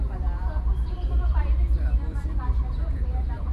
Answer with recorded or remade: remade